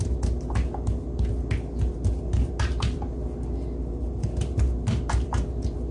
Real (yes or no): yes